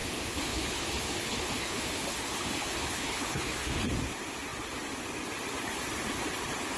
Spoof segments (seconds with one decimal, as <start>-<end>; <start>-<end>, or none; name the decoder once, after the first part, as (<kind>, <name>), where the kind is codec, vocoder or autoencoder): 0.0-3.9 (codec, HILCodec)